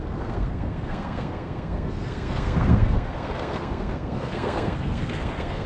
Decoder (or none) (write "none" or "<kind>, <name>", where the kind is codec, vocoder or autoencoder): codec, SNAC